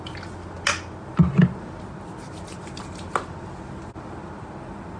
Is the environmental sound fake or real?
real